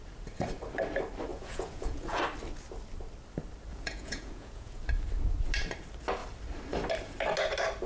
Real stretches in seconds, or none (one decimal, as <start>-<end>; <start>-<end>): 0.0-1.3; 2.2-3.7; 4.8-7.9